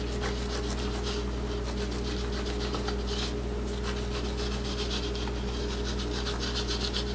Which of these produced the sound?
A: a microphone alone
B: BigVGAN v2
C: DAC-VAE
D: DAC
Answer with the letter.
A